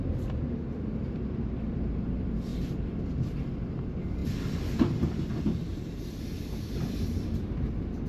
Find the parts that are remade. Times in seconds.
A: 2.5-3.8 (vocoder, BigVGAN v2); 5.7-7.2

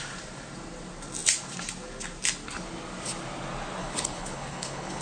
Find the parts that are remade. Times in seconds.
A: 3.8-5.0 (codec, HILCodec)